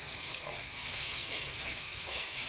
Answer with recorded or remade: remade